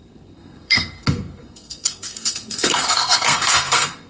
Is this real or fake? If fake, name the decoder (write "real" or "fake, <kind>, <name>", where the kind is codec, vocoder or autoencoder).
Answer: fake, codec, SNAC